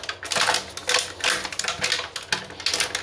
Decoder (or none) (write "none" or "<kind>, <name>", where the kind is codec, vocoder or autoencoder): none